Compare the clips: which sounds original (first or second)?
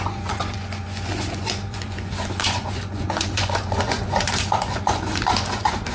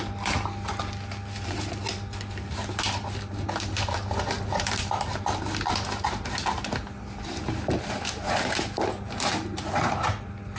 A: second